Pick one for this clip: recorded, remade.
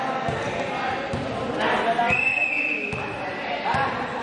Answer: recorded